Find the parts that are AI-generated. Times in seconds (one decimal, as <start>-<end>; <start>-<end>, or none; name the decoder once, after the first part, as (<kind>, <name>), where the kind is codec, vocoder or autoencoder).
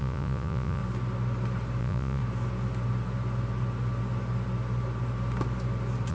0.0-0.8 (vocoder, Vocos); 1.8-2.2